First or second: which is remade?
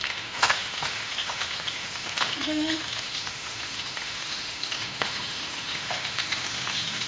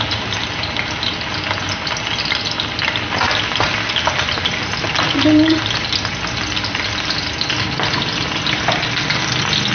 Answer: first